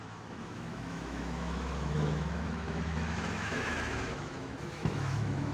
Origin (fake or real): fake